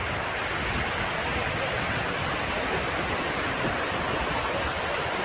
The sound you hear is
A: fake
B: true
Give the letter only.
B